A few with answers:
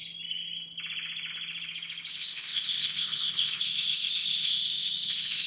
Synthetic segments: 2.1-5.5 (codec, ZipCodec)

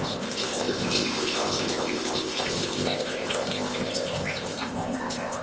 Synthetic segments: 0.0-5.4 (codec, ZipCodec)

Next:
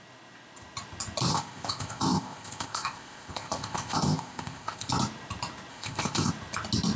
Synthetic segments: 1.3-4.9 (codec, ZipCodec); 5.7-6.3

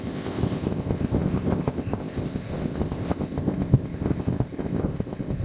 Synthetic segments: 0.0-5.4 (codec, ZipCodec)